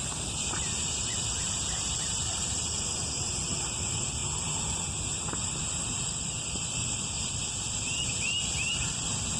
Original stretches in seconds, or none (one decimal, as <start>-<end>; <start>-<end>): 0.0-9.4

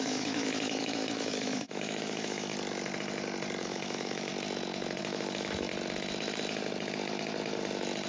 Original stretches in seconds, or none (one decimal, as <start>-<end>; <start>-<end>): 2.5-3.6; 4.3-5.0; 5.7-8.1

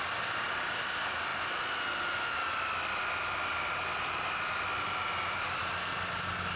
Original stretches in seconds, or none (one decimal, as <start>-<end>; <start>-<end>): 0.0-6.6

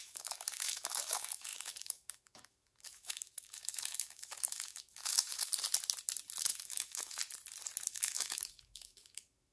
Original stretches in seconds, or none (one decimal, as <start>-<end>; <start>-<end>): 5.5-6.4; 7.2-7.9